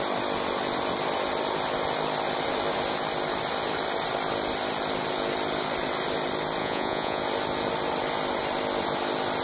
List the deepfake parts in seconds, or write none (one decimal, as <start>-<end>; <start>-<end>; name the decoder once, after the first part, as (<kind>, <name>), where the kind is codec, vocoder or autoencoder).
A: 6.6-7.2 (vocoder, Vocos)